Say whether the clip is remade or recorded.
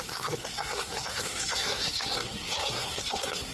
remade